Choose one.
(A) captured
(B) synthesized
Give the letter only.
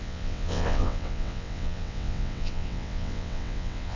B